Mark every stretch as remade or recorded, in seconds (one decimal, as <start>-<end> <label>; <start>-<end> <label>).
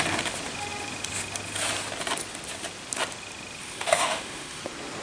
0.0-3.6 recorded; 3.6-4.6 remade; 4.6-5.0 recorded